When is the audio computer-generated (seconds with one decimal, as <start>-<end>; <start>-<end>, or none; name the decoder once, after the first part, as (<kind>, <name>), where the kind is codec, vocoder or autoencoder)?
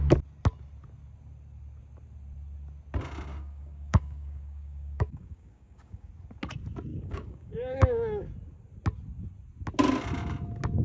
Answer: 3.3-6.1 (codec, DAC); 6.9-8.3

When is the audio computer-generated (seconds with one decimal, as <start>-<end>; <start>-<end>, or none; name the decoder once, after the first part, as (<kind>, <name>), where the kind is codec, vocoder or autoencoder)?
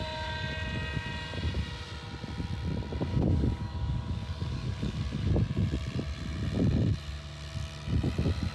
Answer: 3.1-5.3 (codec, DAC)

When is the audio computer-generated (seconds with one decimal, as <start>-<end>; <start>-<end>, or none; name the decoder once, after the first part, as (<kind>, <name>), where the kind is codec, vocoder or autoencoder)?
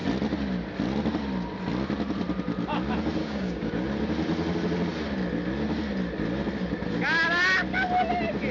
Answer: 3.2-3.7 (codec, DAC)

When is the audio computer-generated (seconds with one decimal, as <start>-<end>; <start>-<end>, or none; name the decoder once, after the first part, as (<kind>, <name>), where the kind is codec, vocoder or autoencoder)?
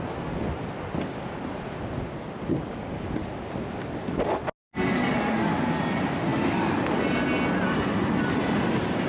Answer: none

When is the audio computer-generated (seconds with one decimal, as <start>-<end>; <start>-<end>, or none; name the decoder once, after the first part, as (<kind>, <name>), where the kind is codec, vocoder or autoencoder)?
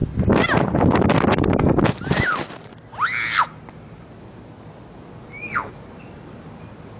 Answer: none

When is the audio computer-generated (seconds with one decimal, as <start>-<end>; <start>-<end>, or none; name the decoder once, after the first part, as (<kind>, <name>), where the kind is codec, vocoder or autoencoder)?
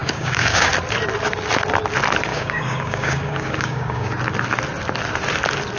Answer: 0.0-0.7 (codec, DAC); 2.3-4.1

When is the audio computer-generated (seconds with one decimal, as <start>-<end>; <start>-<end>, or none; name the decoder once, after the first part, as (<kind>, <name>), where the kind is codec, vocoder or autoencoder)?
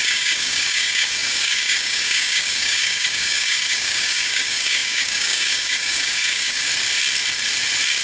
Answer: 0.0-6.7 (codec, DAC)